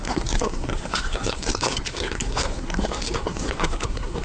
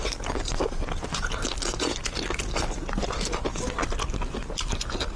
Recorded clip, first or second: second